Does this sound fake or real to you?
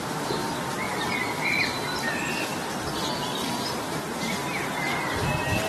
real